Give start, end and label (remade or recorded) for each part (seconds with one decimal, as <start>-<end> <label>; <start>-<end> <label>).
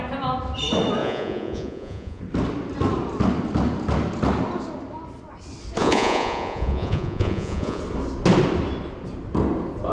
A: 0.0-1.0 recorded; 1.0-2.2 remade; 2.2-5.8 recorded; 5.8-7.8 remade; 7.8-9.9 recorded